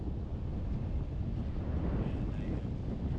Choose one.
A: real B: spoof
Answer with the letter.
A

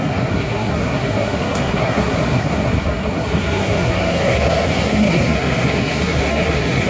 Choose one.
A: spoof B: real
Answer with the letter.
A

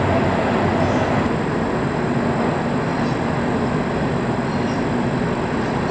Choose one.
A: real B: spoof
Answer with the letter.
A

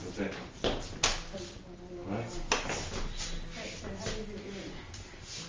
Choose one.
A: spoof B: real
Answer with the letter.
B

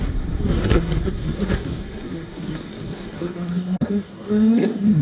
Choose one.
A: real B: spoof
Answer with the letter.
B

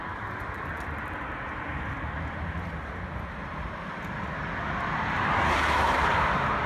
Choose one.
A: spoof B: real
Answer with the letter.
B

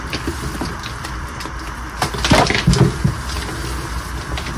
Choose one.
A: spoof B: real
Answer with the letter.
B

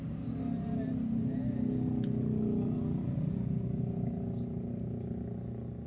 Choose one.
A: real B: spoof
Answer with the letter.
A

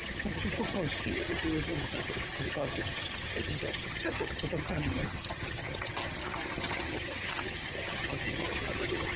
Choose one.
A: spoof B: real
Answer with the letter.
A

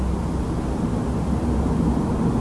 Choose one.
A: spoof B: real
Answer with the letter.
B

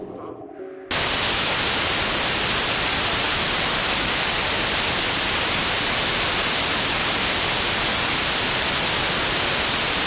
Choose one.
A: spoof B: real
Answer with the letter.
B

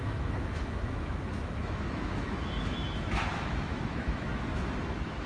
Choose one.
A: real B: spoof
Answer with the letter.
B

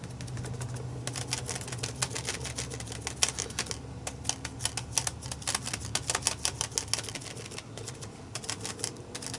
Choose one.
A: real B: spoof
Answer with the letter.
A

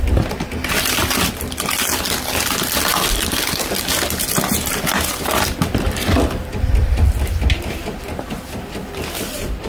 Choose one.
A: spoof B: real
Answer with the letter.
B